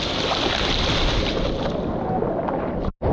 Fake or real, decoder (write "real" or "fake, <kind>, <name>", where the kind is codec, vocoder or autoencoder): real